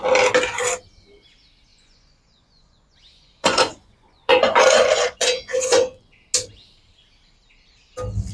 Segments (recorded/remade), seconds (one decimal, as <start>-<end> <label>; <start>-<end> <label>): 0.0-1.7 recorded; 1.7-6.2 remade; 6.2-8.3 recorded